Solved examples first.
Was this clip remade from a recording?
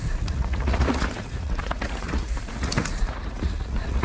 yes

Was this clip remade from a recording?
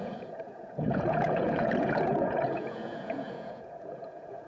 yes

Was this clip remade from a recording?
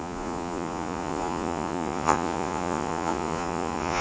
yes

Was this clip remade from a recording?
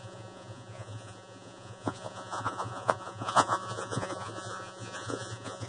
yes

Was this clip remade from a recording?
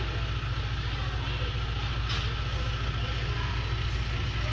no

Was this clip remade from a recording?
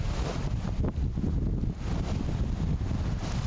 no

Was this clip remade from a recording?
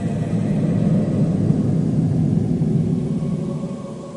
no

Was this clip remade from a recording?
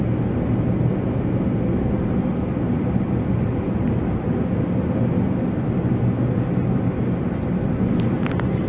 no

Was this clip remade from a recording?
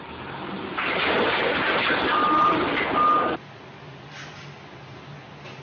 no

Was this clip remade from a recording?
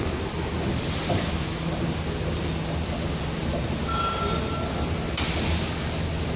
no